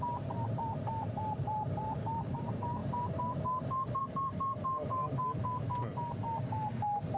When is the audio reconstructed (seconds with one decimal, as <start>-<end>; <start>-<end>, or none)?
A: 0.0-2.8; 4.0-5.0; 6.2-7.2